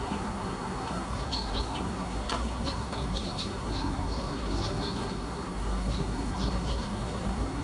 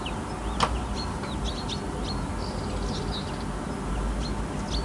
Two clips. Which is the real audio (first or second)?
second